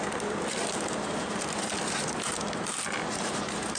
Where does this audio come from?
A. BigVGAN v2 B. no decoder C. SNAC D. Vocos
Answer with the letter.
B